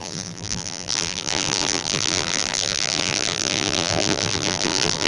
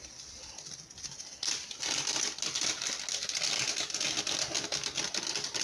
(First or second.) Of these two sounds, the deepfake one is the first